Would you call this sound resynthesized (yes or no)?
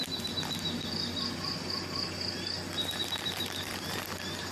no